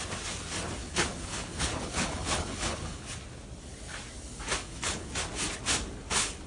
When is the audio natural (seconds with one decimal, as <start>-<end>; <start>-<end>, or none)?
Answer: 0.0-0.8; 3.2-4.6; 5.1-6.5